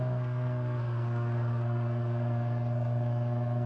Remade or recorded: remade